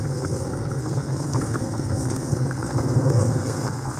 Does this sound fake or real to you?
fake